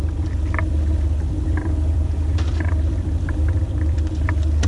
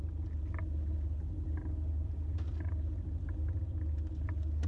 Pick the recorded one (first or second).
second